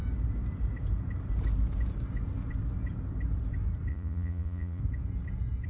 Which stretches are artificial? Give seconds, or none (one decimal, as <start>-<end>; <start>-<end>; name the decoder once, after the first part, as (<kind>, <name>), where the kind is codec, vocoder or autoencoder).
3.9-4.8 (vocoder, Vocos)